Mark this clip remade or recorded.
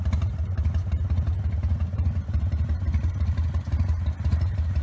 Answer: remade